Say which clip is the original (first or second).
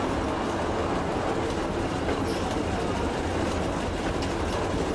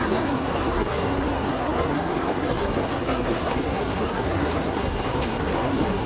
first